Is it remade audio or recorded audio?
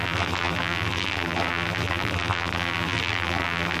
remade